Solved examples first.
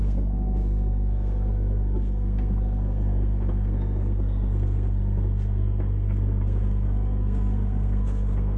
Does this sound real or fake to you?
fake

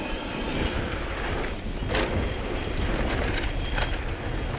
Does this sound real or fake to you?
real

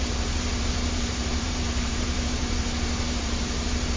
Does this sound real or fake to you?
fake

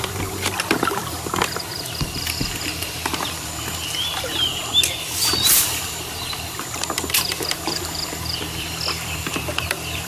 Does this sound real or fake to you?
fake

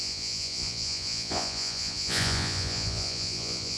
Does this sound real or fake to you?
fake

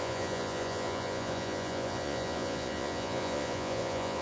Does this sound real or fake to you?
fake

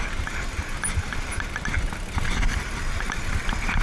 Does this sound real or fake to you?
real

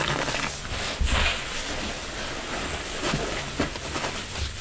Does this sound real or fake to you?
real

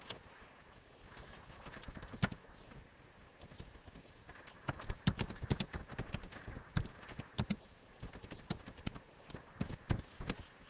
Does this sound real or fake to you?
real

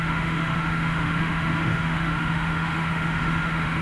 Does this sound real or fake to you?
fake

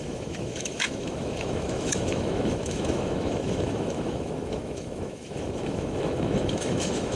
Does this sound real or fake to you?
fake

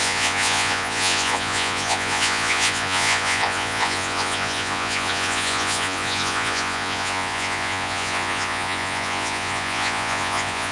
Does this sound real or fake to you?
fake